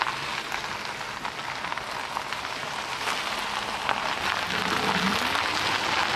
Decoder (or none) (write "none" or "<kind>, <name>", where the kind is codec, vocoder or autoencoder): none